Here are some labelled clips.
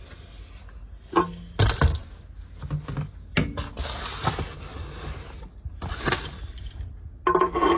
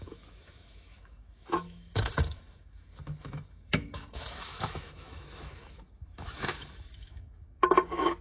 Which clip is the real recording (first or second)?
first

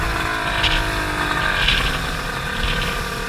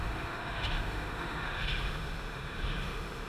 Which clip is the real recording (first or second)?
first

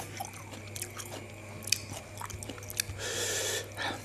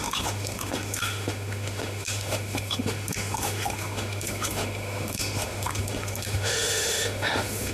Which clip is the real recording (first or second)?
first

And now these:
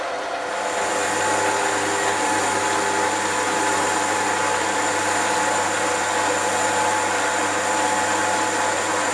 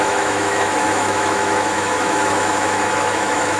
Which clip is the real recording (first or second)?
first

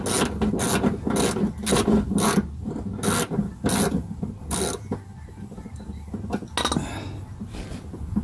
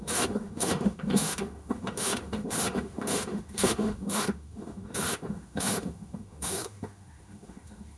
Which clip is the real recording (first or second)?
first